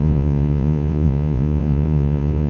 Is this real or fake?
fake